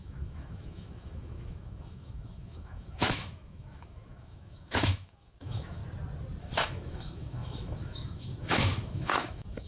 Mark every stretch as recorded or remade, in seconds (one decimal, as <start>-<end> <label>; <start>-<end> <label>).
0.0-5.8 remade; 5.8-6.4 recorded; 6.4-9.7 remade